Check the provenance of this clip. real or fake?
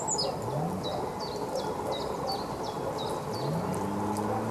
real